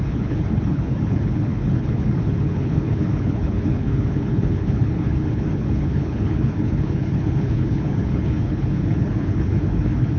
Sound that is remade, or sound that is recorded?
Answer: remade